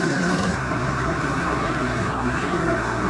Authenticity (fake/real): fake